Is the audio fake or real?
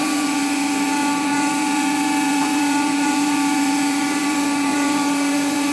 fake